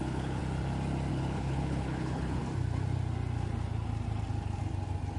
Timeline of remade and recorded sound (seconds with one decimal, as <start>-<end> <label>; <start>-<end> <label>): 0.0-0.4 remade; 0.4-1.1 recorded; 1.1-2.4 remade; 2.4-5.2 recorded